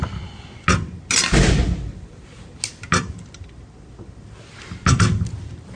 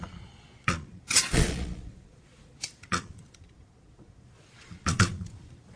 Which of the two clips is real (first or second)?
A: first